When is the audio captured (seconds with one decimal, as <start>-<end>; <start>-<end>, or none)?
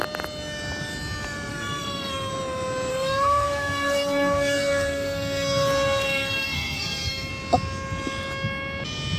0.0-1.5; 2.3-2.9; 7.3-9.2